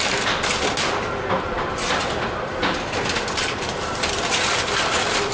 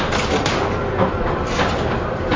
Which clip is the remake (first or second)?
first